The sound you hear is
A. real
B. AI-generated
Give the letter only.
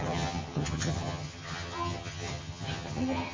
B